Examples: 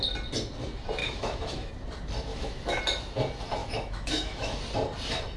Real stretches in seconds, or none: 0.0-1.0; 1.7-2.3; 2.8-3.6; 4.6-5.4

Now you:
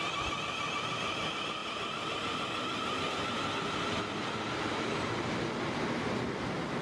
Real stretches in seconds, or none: 0.0-6.8

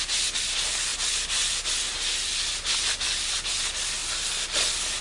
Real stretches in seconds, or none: 0.0-5.0

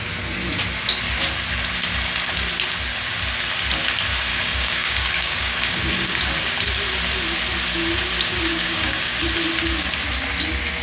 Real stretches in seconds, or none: 0.0-4.3; 5.9-8.5; 9.2-10.8